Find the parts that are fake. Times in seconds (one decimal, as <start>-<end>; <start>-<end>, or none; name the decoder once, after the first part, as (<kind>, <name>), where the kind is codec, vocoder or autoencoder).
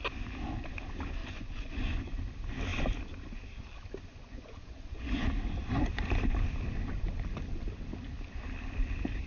1.2-2.1 (vocoder, Vocos); 4.1-5.3